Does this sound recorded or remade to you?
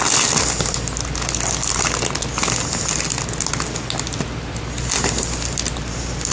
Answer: recorded